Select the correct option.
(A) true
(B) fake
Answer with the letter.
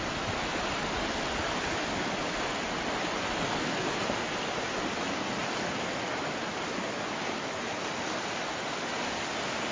A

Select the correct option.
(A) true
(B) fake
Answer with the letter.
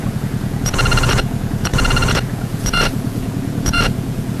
B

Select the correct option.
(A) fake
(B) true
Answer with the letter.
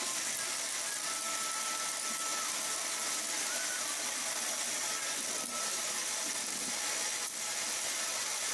B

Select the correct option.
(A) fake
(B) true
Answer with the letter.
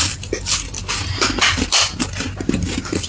B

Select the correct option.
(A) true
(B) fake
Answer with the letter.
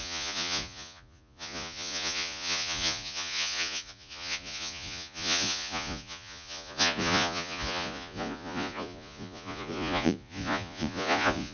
B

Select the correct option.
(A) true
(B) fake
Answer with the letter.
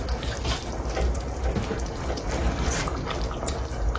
A